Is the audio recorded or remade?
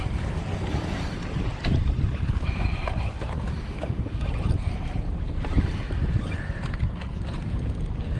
recorded